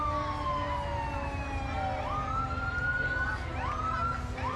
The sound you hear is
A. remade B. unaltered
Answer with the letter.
B